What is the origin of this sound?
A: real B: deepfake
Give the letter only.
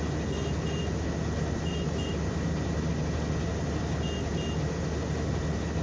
A